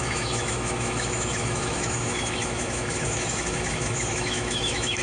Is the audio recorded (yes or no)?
no